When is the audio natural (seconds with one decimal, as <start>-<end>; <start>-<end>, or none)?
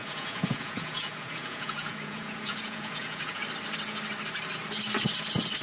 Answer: 3.4-5.6